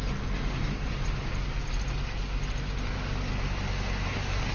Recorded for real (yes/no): yes